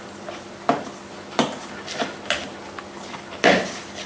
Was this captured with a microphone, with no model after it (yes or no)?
yes